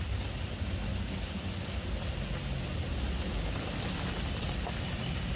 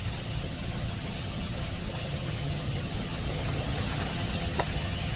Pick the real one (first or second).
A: first